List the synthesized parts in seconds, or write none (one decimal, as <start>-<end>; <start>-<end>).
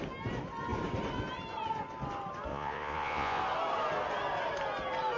2.5-3.4